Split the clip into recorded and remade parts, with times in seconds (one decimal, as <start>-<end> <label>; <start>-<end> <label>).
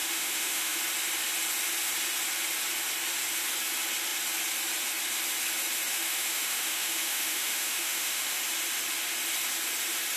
0.0-0.8 remade; 0.8-5.9 recorded; 5.9-8.4 remade; 8.4-10.2 recorded